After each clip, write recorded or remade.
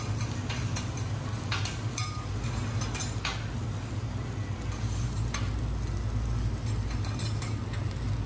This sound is recorded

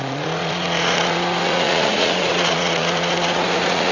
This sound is remade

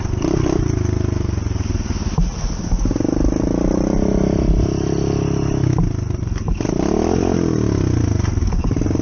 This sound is recorded